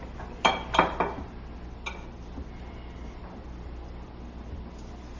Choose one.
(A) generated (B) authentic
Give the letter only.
B